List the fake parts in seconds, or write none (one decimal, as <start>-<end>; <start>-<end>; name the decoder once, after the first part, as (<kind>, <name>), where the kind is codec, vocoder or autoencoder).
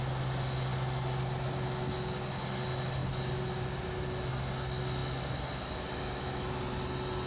none